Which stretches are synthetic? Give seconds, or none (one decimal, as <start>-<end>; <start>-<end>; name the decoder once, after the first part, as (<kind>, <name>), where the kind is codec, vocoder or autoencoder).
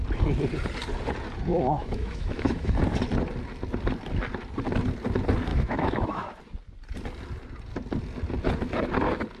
1.5-2.8 (autoencoder, DAC-VAE); 5.5-6.4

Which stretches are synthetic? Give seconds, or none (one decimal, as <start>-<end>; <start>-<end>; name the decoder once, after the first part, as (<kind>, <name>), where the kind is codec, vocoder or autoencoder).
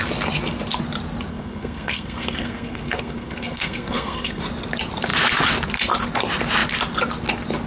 1.3-4.4 (codec, SNAC)